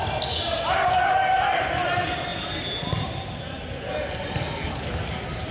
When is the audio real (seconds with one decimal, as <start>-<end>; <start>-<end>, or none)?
0.0-5.5